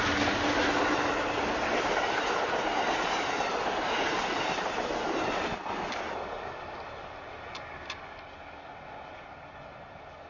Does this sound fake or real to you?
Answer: real